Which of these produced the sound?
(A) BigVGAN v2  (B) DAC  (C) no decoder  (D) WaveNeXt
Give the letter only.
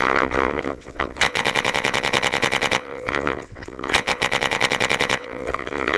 D